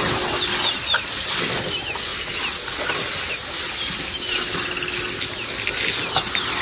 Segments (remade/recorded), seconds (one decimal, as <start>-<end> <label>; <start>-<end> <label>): 0.0-6.6 recorded